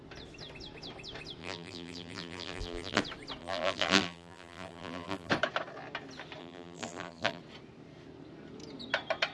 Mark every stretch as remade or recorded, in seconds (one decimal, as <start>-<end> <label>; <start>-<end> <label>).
0.0-1.4 recorded; 1.4-3.0 remade; 3.0-3.4 recorded; 3.4-5.3 remade; 5.3-6.4 recorded; 6.4-7.4 remade; 7.4-9.3 recorded